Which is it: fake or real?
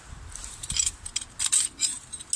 real